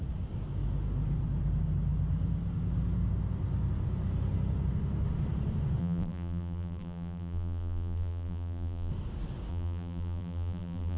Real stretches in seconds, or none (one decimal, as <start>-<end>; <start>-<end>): 0.0-5.8; 8.9-9.5